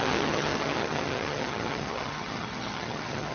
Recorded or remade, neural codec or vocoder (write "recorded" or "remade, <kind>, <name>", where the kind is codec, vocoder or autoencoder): remade, vocoder, HiFi-GAN